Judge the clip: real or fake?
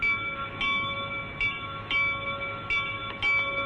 real